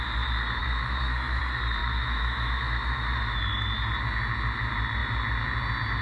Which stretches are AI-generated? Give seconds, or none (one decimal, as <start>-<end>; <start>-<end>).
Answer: 0.6-1.4; 1.8-3.4